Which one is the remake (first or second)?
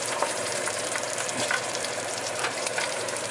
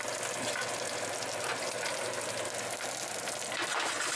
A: first